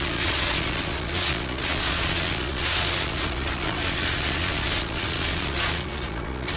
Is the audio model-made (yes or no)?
yes